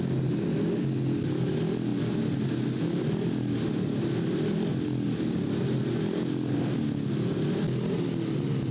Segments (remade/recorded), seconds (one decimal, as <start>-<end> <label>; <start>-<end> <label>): 0.0-8.7 recorded